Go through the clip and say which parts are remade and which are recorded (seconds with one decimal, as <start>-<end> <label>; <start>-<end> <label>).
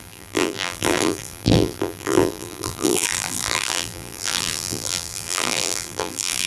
0.0-6.5 remade